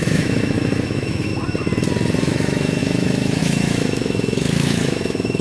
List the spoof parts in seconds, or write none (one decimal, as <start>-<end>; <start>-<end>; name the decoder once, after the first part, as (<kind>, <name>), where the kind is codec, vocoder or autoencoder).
0.0-1.3 (autoencoder, DAC-VAE); 2.2-5.4